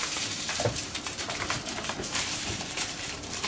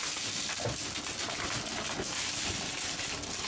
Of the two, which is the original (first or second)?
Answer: second